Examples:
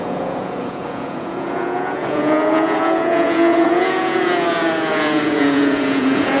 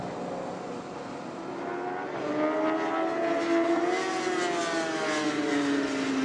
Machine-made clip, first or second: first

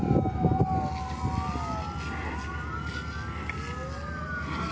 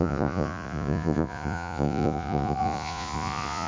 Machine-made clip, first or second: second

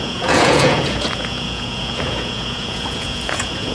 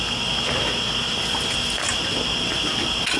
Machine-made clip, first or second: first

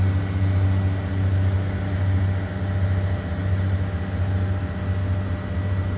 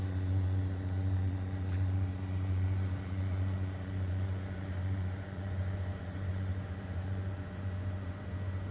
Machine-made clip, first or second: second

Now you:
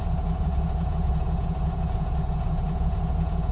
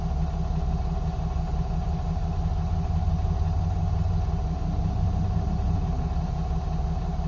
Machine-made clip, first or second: first